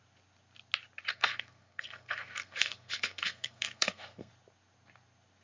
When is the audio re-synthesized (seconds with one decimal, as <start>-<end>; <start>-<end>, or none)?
1.1-4.3